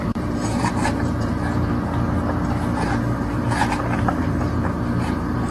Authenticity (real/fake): fake